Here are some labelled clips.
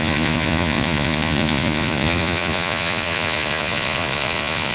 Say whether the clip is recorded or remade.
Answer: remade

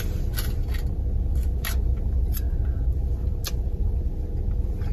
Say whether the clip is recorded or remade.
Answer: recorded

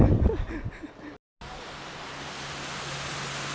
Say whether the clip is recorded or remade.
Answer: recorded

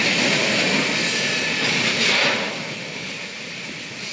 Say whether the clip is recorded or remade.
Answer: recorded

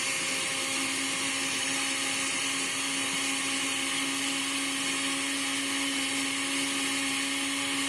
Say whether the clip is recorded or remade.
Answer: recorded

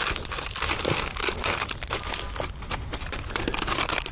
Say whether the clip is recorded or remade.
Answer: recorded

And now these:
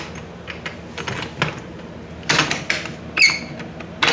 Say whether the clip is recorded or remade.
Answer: recorded